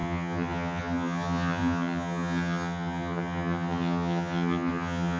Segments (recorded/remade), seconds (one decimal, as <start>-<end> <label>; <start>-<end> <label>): 0.0-5.2 remade